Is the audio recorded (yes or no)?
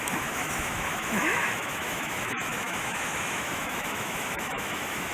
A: no